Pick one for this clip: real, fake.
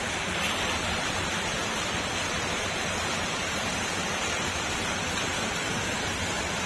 fake